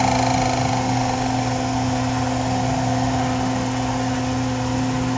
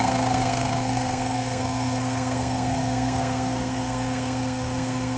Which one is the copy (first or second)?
second